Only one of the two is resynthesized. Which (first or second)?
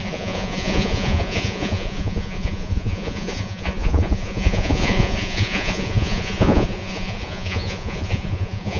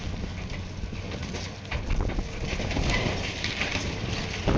first